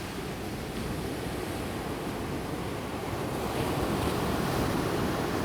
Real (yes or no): yes